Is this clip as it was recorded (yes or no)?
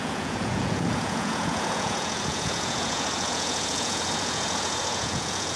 no